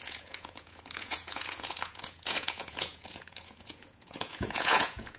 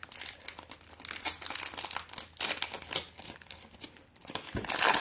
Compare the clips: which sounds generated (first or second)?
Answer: first